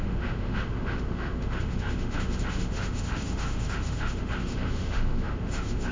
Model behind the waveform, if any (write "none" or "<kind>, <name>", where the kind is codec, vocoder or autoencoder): autoencoder, DAC-VAE